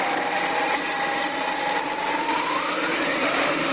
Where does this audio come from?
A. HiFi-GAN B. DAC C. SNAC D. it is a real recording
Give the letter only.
D